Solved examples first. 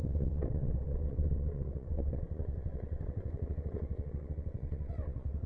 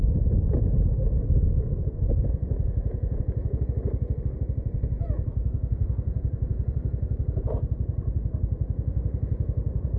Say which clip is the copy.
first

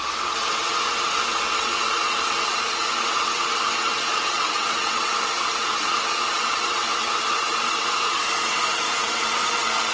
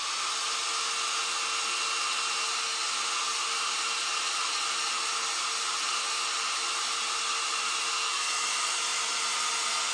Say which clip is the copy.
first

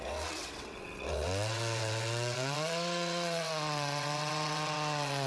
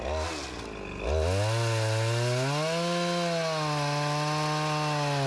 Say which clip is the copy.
first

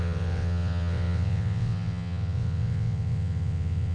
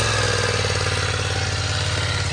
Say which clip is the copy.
first